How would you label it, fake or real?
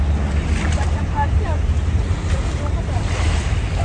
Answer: real